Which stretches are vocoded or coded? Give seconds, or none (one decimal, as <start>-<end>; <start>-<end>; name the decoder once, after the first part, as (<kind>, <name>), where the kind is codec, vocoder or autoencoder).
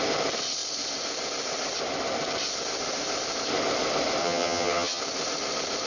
4.2-5.0 (vocoder, HiFi-GAN)